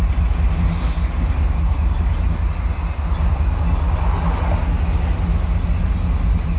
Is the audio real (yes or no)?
yes